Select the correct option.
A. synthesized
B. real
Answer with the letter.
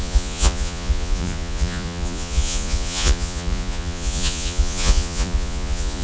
A